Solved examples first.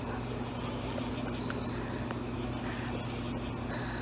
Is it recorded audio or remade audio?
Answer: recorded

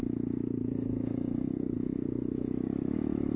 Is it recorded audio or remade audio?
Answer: remade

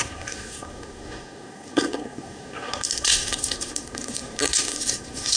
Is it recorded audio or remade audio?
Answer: remade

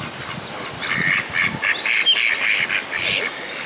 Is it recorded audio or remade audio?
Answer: recorded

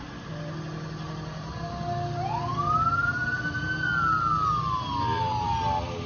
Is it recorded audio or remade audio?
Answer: recorded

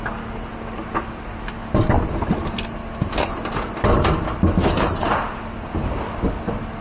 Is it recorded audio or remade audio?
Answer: recorded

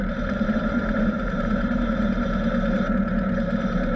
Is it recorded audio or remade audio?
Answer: remade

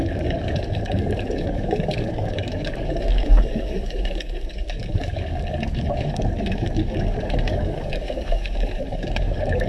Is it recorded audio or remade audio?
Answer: remade